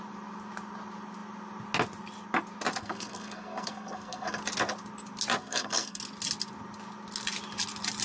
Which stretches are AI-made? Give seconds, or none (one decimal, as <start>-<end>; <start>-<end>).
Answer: 2.8-4.4; 5.4-6.0